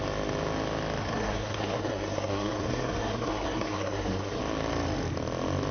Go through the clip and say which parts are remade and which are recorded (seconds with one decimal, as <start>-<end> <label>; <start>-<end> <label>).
0.0-1.0 recorded; 1.0-4.4 remade; 4.4-5.7 recorded